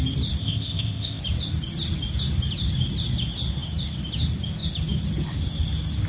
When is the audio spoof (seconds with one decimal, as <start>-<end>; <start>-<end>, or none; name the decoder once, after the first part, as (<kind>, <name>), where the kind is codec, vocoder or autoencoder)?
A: 0.4-1.2 (codec, ZipCodec)